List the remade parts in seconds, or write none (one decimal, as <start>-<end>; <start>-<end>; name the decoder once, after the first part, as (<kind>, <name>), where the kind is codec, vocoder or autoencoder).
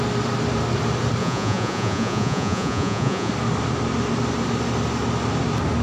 1.2-3.3 (vocoder, Vocos)